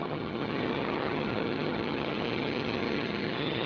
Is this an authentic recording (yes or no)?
no